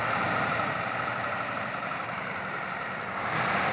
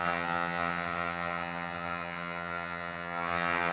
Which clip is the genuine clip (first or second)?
first